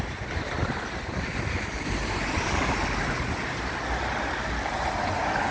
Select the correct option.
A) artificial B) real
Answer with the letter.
B